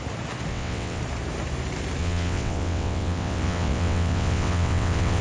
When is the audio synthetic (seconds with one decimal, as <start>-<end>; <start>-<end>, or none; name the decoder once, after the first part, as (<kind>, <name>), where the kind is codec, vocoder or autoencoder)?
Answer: 0.5-1.0 (vocoder, WaveNeXt); 2.0-5.2